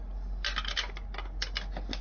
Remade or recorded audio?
recorded